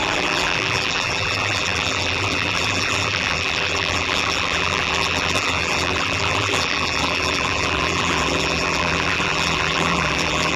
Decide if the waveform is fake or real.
fake